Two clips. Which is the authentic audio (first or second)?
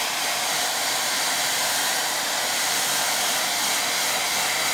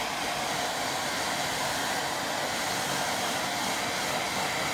second